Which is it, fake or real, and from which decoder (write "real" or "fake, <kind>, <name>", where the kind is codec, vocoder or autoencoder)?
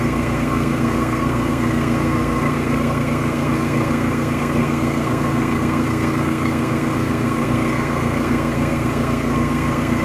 fake, codec, SNAC